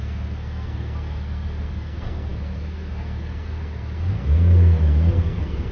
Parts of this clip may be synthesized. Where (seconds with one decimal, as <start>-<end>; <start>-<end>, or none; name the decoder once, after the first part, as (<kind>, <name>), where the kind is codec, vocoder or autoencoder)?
0.0-5.7 (codec, SNAC)